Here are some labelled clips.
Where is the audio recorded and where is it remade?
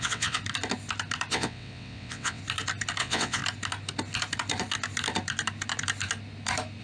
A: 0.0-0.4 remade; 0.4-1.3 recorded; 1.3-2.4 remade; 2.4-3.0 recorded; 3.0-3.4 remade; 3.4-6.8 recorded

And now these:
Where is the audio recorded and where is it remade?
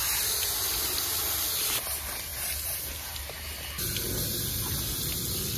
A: 0.0-2.3 recorded; 2.3-3.7 remade; 3.7-5.6 recorded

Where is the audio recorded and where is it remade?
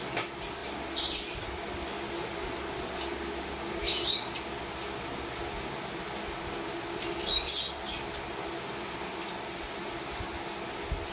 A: 0.0-11.1 recorded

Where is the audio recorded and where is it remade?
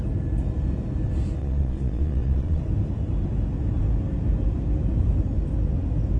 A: 0.0-1.4 recorded; 1.4-2.6 remade; 2.6-6.2 recorded